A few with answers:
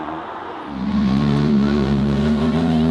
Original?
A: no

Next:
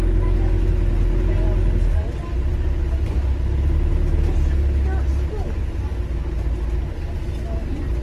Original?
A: yes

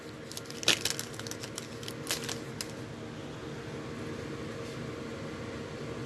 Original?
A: yes